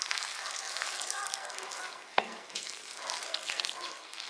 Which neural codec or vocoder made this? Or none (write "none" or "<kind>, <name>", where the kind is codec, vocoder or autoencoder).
codec, SNAC